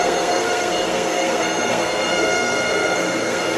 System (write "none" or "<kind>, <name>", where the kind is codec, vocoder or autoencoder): codec, SNAC